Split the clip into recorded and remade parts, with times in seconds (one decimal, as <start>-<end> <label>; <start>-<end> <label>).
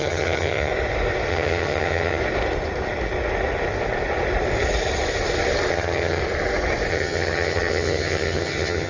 0.0-0.7 remade; 0.7-1.3 recorded; 1.3-2.2 remade; 2.2-5.7 recorded; 5.7-6.2 remade; 6.2-6.9 recorded; 6.9-8.9 remade